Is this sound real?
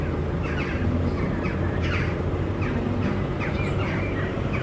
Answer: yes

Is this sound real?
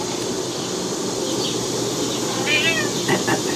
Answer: yes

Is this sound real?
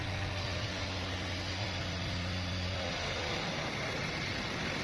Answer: yes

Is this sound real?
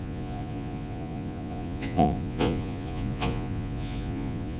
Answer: no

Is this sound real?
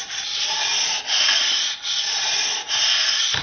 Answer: no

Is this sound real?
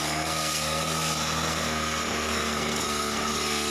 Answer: no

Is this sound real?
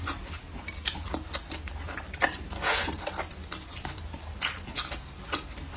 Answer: yes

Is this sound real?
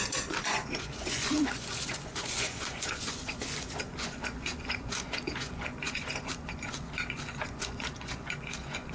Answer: no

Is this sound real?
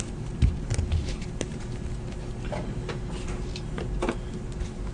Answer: yes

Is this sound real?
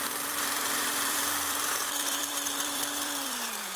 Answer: no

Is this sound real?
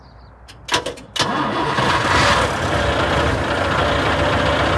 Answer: yes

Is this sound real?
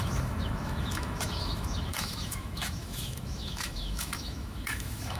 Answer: no